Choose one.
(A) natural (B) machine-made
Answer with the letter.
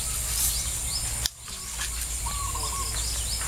A